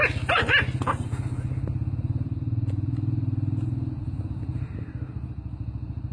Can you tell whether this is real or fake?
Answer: real